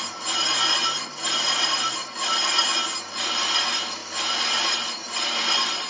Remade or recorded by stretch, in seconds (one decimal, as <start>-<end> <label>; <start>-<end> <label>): 0.0-1.2 recorded; 1.2-2.3 remade; 2.3-5.9 recorded